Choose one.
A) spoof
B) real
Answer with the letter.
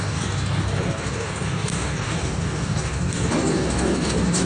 A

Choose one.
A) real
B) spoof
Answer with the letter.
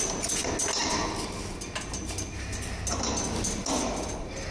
A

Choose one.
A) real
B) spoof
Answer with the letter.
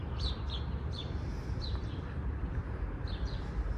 B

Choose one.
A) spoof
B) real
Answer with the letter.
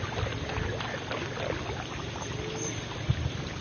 B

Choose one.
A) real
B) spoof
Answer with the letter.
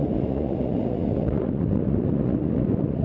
B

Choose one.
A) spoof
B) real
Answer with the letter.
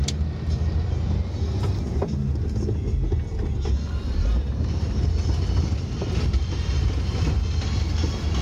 B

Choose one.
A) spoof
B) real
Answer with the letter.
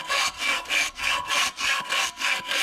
A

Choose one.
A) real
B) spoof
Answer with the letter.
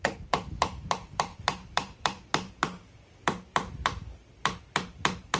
B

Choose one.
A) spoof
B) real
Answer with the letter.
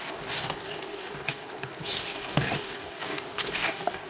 A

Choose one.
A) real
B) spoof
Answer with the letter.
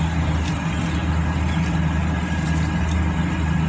A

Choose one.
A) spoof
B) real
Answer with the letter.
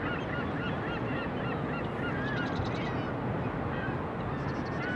B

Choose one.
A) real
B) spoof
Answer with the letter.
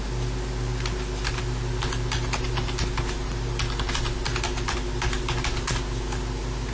A